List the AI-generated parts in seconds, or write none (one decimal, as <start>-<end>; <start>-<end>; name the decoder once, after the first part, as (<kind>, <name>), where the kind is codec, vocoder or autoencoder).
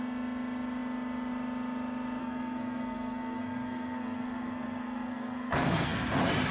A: 2.2-6.1 (codec, SNAC)